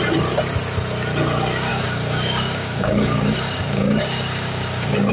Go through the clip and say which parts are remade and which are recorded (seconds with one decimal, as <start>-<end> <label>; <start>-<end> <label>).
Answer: 0.0-1.7 recorded; 1.7-5.1 remade